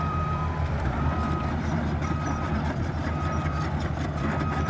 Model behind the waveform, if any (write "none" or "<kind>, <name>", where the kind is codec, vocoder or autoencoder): vocoder, BigVGAN v2